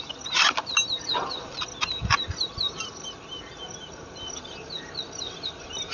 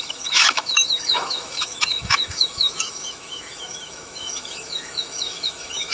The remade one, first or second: second